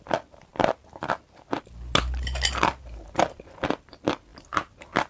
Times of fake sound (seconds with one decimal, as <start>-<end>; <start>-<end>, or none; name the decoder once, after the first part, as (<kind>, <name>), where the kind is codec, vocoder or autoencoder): none